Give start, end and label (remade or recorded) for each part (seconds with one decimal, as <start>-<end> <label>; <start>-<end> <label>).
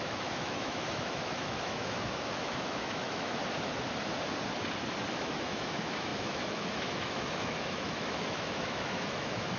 0.0-3.4 remade; 3.4-5.1 recorded; 5.1-9.6 remade